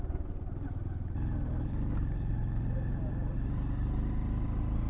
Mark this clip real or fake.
real